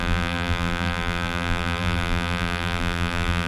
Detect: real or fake fake